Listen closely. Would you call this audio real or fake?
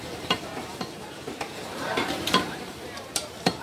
fake